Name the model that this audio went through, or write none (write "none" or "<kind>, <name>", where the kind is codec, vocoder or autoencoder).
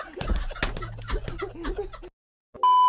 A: none